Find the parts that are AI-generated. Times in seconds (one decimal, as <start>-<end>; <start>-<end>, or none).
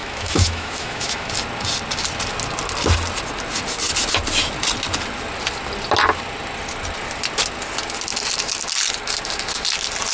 0.0-1.3